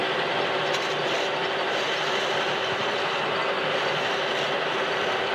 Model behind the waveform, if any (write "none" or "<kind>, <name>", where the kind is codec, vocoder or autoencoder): none